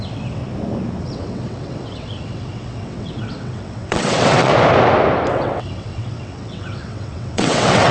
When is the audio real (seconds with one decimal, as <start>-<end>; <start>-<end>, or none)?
0.4-1.0; 4.5-5.3